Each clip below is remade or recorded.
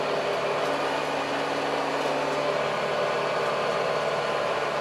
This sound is recorded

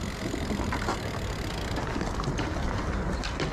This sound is recorded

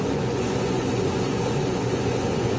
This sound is remade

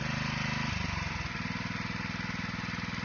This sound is recorded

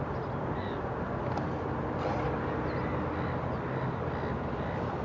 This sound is recorded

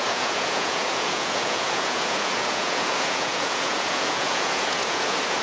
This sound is remade